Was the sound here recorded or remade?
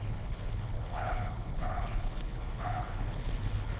remade